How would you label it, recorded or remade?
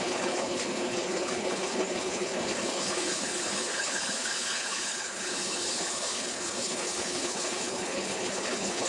remade